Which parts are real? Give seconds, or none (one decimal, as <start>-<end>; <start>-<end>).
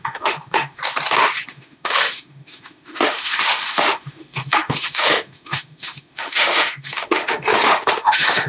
0.8-1.5